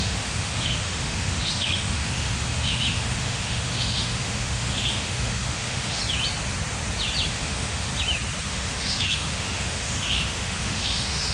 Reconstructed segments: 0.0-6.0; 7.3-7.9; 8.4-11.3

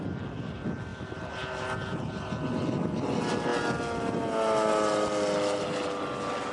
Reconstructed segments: none

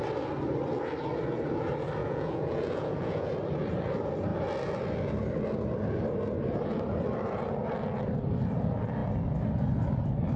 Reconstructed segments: 2.0-3.3

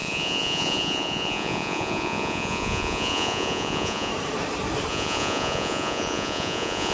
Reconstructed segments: 0.0-4.1; 4.9-6.9

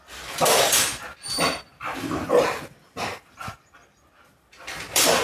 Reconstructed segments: 0.0-5.2

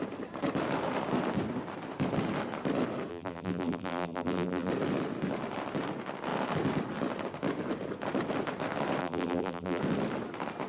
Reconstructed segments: 3.1-4.7; 9.0-9.8

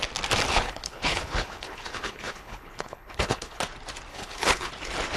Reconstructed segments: 0.5-3.6; 4.1-4.7

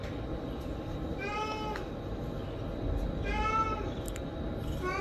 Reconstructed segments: none